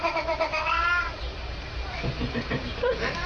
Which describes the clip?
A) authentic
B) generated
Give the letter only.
B